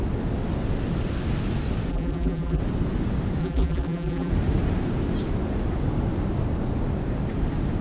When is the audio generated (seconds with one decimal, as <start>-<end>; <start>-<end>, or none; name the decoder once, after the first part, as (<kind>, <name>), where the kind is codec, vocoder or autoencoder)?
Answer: 1.9-2.6 (vocoder, BigVGAN v2); 3.4-4.3